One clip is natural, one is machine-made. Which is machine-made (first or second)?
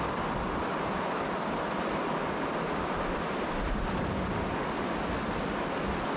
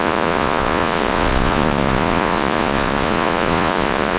second